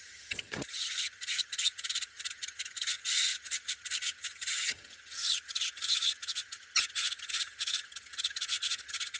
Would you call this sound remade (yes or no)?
yes